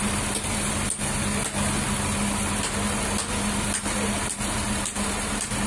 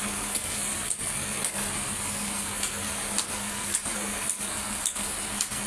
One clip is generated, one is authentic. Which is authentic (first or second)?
first